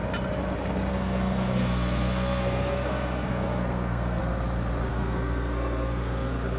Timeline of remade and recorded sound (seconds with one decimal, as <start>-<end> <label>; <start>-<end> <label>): 0.0-0.9 recorded; 0.9-4.2 remade; 4.2-4.9 recorded; 4.9-6.6 remade